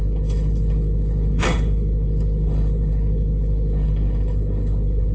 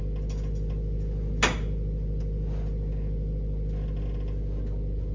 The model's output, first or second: first